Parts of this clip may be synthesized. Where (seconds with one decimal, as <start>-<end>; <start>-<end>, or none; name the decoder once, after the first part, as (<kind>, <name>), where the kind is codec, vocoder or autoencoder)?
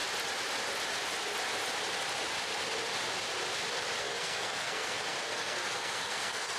4.0-6.6 (codec, SNAC)